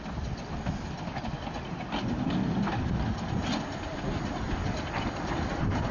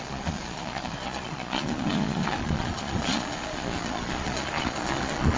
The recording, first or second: first